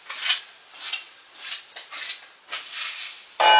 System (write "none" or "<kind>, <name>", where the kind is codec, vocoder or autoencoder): none